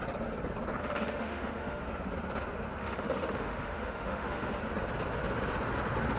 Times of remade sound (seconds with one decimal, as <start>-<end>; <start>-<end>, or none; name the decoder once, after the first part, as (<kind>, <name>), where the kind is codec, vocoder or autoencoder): 0.8-1.8 (autoencoder, DAC-VAE); 2.8-4.6